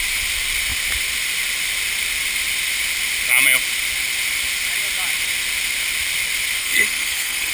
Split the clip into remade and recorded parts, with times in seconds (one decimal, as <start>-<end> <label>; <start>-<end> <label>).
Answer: 0.0-6.6 recorded; 6.6-7.5 remade